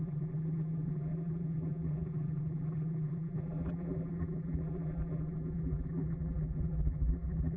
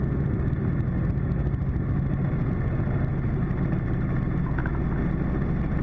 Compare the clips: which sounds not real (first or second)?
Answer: first